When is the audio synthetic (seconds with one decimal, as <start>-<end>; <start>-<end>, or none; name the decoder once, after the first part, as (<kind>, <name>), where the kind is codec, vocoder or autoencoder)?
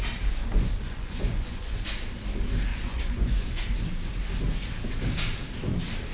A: 0.4-1.9 (vocoder, Vocos); 2.7-3.6